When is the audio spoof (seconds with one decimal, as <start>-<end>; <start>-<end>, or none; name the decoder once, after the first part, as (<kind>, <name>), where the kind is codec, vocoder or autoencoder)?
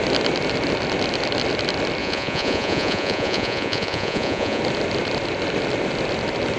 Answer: 2.0-4.6 (vocoder, Vocos)